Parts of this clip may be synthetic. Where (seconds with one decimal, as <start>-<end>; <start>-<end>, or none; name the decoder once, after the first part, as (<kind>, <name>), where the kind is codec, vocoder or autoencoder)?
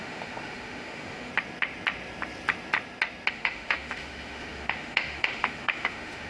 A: 0.0-1.3 (autoencoder, DAC-VAE); 3.3-6.3